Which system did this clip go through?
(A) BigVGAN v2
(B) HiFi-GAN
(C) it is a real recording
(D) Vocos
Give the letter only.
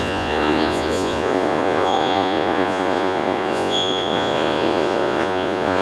D